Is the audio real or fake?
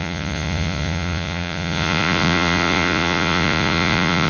fake